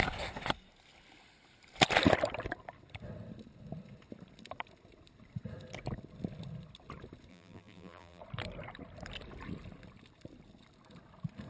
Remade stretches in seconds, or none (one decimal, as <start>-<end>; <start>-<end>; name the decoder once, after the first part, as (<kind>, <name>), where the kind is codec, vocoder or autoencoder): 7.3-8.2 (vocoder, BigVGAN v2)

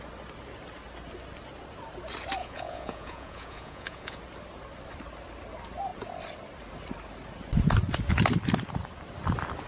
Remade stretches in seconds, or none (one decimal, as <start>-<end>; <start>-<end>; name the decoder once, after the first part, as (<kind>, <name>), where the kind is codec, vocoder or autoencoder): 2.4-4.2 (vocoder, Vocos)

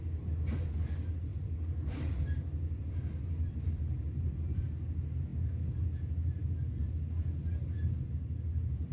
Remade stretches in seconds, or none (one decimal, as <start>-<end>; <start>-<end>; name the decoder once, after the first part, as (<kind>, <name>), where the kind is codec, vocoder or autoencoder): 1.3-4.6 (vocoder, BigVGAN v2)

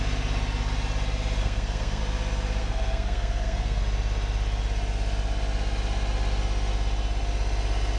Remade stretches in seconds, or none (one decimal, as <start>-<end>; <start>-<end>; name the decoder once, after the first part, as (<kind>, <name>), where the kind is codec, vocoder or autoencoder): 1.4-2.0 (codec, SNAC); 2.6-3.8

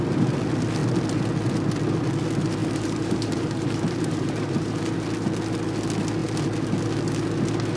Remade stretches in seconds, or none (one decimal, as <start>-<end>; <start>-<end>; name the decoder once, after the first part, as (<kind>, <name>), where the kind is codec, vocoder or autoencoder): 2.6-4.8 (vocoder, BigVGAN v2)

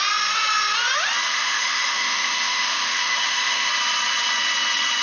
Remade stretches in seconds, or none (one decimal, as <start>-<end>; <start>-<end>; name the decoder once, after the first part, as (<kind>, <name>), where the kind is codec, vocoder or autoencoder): 1.3-3.7 (autoencoder, DAC-VAE)